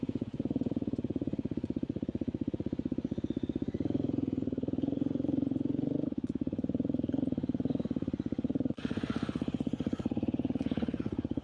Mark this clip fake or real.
fake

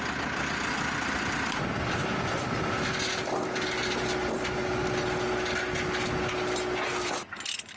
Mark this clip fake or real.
real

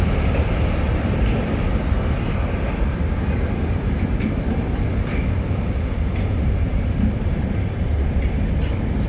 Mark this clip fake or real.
real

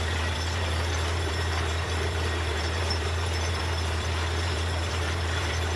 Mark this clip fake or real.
fake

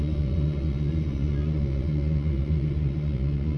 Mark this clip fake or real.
fake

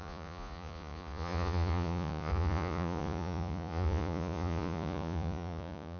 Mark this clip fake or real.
fake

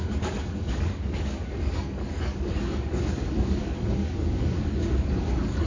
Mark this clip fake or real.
fake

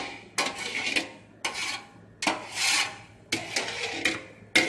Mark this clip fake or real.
real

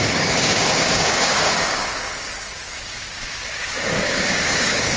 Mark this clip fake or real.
fake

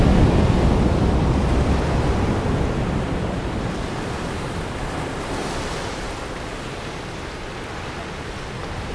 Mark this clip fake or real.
fake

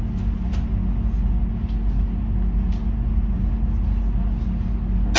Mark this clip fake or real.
real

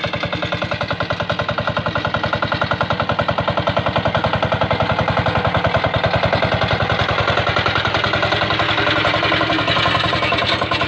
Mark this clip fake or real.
real